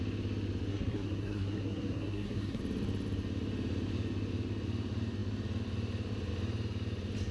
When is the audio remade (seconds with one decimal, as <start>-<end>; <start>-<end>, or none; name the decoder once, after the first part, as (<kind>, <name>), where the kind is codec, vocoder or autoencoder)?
0.7-2.6 (codec, SNAC)